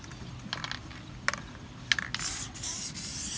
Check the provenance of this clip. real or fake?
real